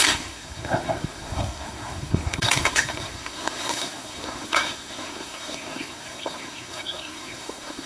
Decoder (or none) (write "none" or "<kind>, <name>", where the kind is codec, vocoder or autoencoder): codec, SNAC